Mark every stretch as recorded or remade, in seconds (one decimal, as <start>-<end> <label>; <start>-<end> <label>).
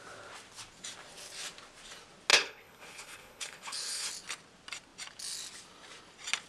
0.0-2.3 recorded; 2.3-4.1 remade; 4.1-6.5 recorded